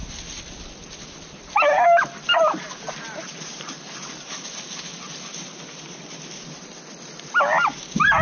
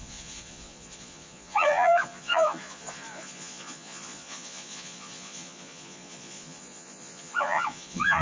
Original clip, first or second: first